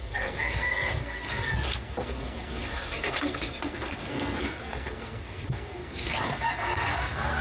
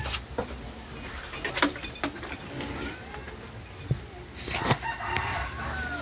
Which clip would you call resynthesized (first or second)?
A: first